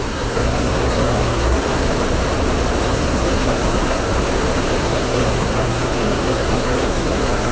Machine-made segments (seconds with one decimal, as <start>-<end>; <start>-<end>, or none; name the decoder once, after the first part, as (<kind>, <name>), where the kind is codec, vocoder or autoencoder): 0.0-1.9 (codec, SNAC); 2.8-4.0; 4.8-7.5